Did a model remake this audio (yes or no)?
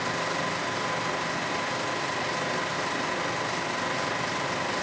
no